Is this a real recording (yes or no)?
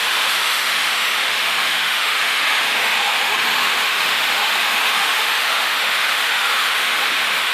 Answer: no